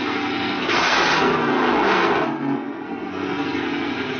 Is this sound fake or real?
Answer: fake